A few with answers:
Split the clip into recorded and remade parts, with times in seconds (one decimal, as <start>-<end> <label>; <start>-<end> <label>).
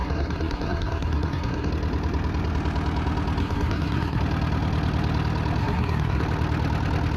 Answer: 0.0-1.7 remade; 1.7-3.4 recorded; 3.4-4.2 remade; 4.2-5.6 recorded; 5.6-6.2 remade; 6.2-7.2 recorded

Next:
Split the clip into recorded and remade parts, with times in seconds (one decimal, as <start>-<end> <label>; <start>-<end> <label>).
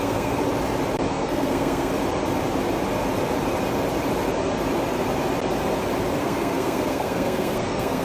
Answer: 0.0-0.4 remade; 0.4-1.1 recorded; 1.1-1.9 remade; 1.9-6.2 recorded; 6.2-8.0 remade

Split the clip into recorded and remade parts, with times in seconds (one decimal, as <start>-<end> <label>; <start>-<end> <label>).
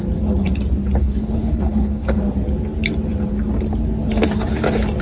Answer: 0.0-1.0 recorded; 1.0-2.2 remade; 2.2-5.0 recorded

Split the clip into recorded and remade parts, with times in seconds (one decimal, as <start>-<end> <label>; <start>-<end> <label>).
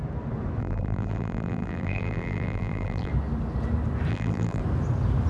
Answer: 0.0-0.6 recorded; 0.6-3.1 remade; 3.1-4.1 recorded; 4.1-4.6 remade; 4.6-5.3 recorded